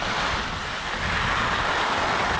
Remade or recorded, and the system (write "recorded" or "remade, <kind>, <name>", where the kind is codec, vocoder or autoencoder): recorded